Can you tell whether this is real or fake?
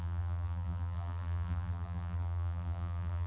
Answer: fake